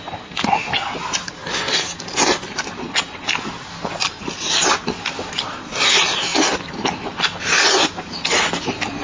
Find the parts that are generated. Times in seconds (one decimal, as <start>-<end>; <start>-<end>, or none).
none